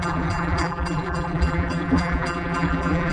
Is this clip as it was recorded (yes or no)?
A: no